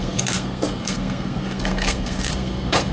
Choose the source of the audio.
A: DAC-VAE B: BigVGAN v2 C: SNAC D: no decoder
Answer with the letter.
C